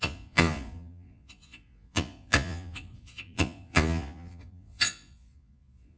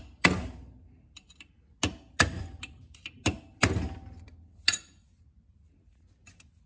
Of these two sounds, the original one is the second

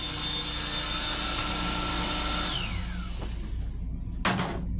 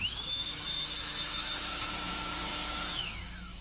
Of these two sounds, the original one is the first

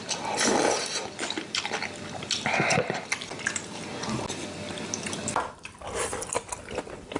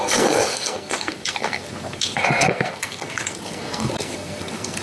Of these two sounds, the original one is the first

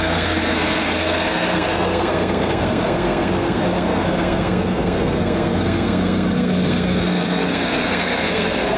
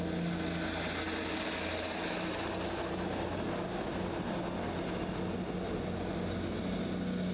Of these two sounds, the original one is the second